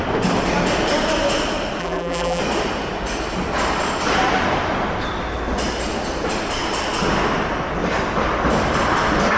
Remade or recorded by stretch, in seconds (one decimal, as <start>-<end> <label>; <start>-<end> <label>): 0.0-1.8 recorded; 1.8-2.4 remade; 2.4-9.4 recorded